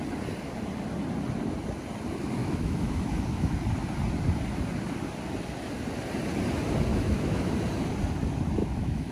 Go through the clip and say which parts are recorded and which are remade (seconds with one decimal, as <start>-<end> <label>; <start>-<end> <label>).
0.0-2.4 recorded; 2.4-3.6 remade; 3.6-6.9 recorded; 6.9-7.5 remade; 7.5-8.6 recorded; 8.6-9.1 remade